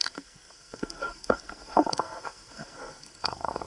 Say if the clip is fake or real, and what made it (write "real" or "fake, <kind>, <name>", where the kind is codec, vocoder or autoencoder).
fake, codec, SNAC